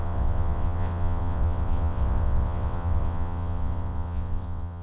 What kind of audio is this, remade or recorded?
remade